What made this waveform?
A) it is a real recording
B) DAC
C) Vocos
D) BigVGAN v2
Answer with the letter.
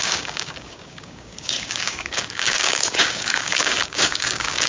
B